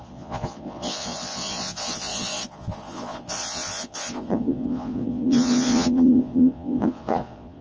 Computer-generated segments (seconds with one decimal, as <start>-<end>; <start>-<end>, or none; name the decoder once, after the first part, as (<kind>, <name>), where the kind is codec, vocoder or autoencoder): 0.0-7.6 (vocoder, Vocos)